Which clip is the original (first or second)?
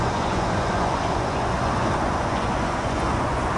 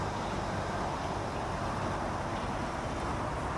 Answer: second